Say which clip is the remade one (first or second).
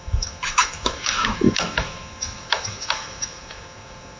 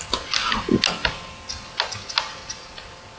first